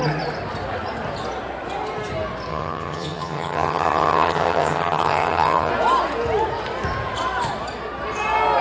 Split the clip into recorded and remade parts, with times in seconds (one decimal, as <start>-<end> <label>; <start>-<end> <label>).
0.0-2.5 recorded; 2.5-5.7 remade; 5.7-8.6 recorded